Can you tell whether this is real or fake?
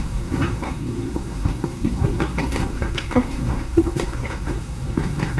fake